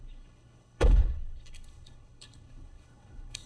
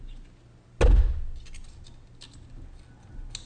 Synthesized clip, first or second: first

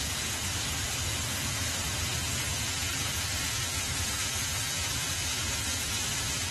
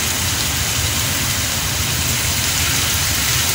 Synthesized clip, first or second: first